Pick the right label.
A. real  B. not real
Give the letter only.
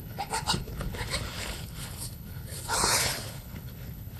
B